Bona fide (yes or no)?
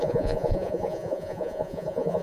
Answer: no